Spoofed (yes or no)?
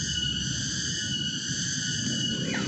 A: no